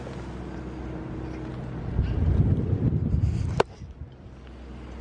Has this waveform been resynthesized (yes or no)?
no